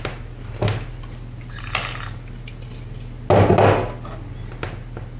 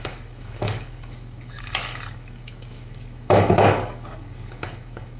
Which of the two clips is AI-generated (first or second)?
second